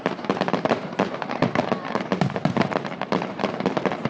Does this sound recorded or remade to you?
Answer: remade